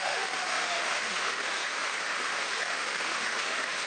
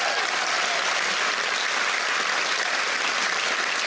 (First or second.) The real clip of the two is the second